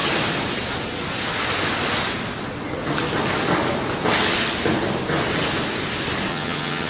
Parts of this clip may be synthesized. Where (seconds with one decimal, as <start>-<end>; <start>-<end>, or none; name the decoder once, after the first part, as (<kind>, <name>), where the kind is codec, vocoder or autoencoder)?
6.3-6.9 (vocoder, HiFi-GAN)